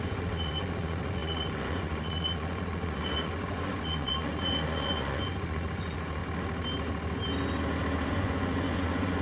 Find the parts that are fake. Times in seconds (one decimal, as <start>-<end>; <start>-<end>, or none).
0.0-6.2; 8.1-9.2

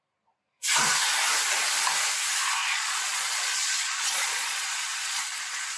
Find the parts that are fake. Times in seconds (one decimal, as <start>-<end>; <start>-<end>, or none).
2.6-5.8